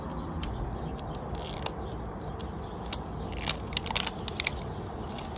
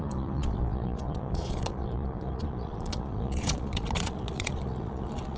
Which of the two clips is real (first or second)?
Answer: first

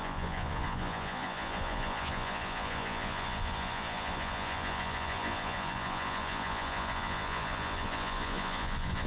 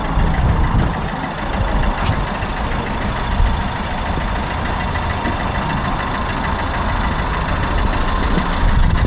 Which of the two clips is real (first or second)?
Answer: second